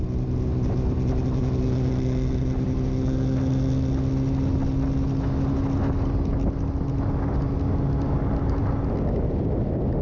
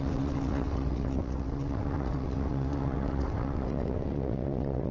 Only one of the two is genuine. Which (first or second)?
first